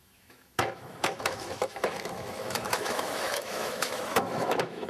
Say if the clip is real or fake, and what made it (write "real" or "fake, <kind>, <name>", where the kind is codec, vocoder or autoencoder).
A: fake, autoencoder, DAC-VAE